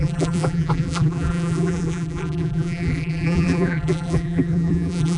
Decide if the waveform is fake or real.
fake